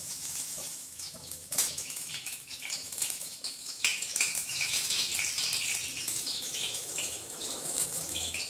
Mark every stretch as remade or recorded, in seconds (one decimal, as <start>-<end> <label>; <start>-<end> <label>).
0.0-5.1 remade; 5.1-6.0 recorded; 6.0-8.5 remade